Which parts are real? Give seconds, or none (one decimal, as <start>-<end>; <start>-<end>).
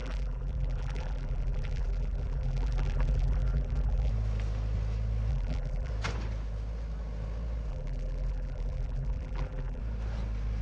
4.1-5.3; 5.9-7.7; 9.8-10.6